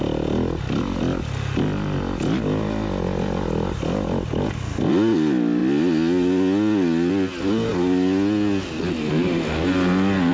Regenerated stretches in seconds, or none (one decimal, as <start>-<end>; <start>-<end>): none